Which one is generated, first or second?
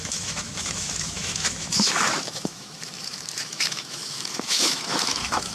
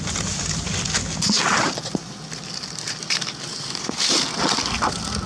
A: first